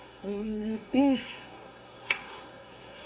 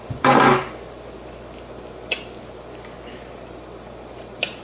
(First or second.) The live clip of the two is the second